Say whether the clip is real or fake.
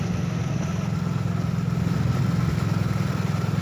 real